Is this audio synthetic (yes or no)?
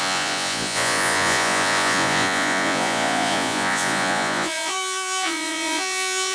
yes